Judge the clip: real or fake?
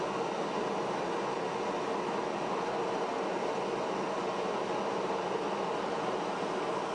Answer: real